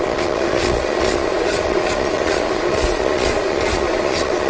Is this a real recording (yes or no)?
no